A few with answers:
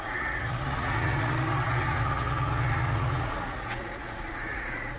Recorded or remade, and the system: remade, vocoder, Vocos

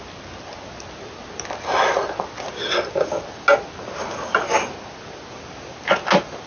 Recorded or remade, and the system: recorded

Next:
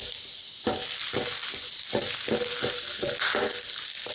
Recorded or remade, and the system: recorded